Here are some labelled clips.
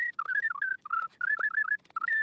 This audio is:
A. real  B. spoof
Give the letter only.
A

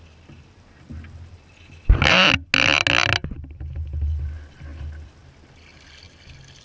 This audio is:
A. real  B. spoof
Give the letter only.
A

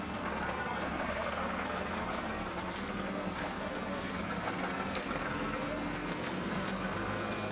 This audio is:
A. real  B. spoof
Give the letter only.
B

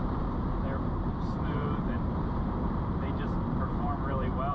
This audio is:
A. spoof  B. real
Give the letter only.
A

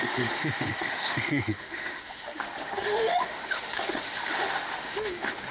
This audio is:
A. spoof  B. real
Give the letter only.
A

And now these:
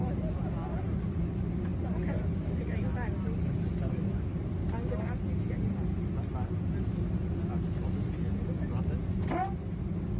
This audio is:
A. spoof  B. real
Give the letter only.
B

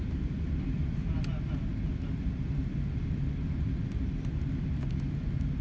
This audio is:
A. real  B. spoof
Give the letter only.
A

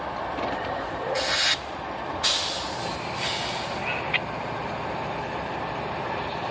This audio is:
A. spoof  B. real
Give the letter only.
B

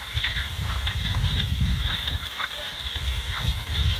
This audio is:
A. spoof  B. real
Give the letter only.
A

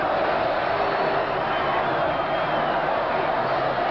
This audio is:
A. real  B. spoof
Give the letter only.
A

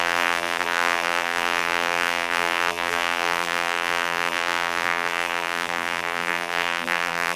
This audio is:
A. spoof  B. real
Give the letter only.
A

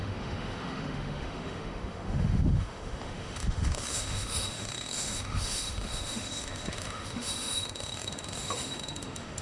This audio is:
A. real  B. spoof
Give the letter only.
B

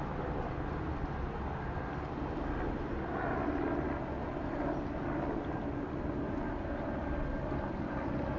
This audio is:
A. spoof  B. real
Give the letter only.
B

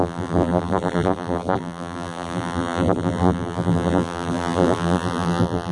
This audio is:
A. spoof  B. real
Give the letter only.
A